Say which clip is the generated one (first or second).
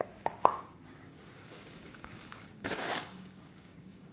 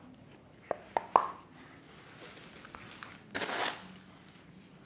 first